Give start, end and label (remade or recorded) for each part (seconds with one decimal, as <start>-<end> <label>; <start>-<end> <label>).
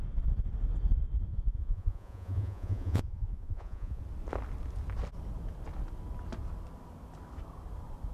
0.0-1.3 recorded; 1.3-4.0 remade; 4.0-8.1 recorded